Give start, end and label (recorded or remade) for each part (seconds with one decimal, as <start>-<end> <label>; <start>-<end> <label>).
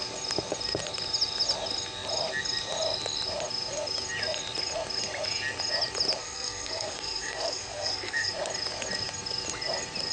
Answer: 0.0-6.2 recorded; 6.2-8.3 remade; 8.3-10.1 recorded